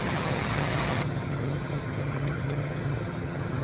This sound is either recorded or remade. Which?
remade